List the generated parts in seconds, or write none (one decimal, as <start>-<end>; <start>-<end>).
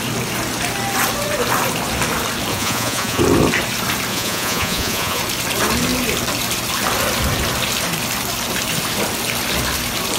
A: 2.5-3.2; 4.1-5.2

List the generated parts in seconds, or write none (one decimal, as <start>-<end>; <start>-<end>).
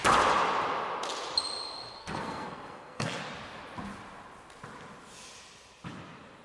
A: 2.0-3.2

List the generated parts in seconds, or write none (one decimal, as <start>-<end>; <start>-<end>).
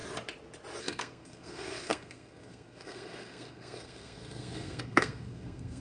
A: 0.8-5.8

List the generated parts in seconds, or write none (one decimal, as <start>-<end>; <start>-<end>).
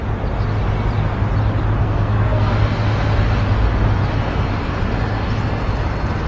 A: 1.8-2.5